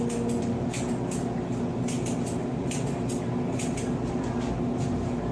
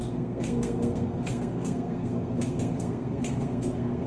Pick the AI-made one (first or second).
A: second